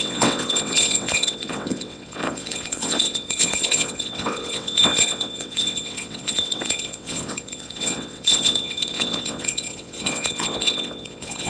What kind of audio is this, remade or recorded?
remade